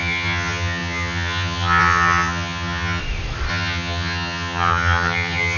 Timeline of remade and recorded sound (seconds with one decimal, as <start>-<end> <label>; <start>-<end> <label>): 0.0-3.0 remade; 3.0-3.5 recorded; 3.5-5.6 remade